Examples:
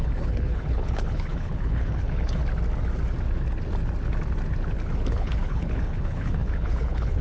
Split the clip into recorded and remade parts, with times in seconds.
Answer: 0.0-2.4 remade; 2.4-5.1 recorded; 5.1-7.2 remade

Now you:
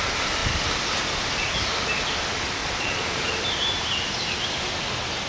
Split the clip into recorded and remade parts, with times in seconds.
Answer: 0.0-2.6 recorded; 2.6-3.2 remade; 3.2-5.3 recorded

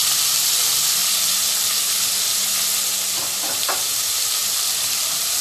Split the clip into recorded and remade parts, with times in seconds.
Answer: 0.0-0.6 recorded; 0.6-1.0 remade; 1.0-3.6 recorded; 3.6-5.4 remade

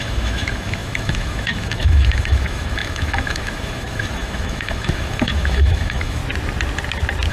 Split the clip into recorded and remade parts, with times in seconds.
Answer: 0.0-6.2 remade; 6.2-7.3 recorded

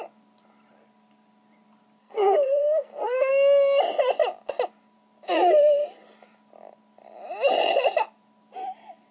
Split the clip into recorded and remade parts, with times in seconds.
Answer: 0.0-2.0 recorded; 2.0-3.3 remade; 3.3-9.1 recorded